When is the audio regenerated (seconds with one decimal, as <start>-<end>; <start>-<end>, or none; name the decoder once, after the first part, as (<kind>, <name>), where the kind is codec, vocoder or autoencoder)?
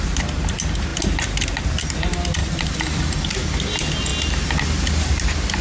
2.4-3.2 (vocoder, BigVGAN v2)